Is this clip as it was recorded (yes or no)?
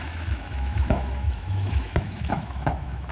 no